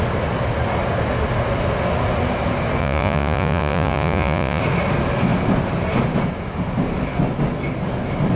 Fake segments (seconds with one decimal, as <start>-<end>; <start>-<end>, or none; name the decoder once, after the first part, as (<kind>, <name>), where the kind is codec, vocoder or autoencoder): 2.8-4.6 (vocoder, Vocos)